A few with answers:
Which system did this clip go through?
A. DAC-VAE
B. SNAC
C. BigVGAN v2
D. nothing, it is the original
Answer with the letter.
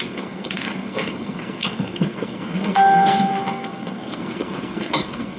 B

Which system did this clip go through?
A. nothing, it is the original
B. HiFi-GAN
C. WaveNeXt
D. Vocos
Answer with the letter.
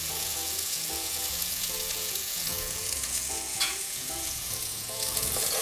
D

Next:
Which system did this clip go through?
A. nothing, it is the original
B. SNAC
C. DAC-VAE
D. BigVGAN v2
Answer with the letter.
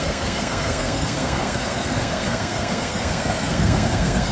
B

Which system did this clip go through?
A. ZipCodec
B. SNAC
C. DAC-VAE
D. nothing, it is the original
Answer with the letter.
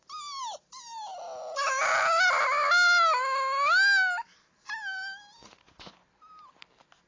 D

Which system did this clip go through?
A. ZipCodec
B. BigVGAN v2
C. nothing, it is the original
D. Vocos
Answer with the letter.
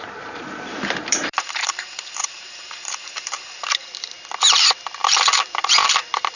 B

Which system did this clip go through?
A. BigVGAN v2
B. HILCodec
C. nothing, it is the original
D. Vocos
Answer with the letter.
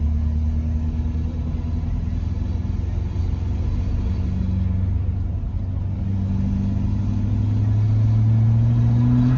C